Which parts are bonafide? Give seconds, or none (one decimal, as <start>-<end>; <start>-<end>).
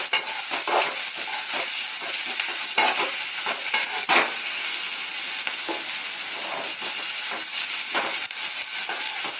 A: 0.0-4.4; 5.0-9.4